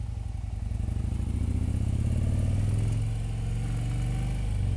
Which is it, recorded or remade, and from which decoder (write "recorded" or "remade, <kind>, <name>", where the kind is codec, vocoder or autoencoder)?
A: recorded